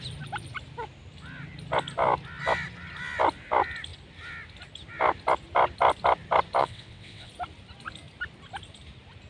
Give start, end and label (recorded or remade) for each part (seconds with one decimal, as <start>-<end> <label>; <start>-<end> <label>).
0.0-6.6 recorded; 6.6-7.3 remade; 7.3-9.3 recorded